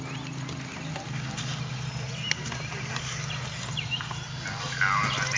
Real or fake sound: real